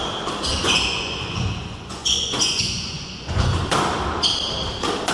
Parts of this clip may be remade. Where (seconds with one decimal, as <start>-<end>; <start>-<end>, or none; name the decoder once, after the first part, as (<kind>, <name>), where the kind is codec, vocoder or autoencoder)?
0.5-3.6 (vocoder, Vocos)